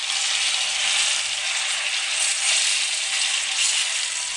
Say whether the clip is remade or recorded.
recorded